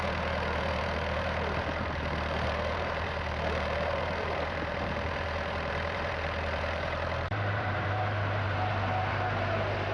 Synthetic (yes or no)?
yes